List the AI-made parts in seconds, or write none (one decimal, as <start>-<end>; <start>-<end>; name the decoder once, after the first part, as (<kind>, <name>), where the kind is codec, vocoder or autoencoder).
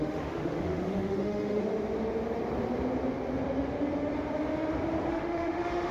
0.0-1.6 (autoencoder, DAC-VAE); 5.1-5.9